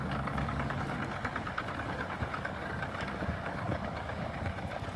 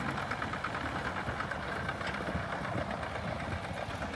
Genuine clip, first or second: second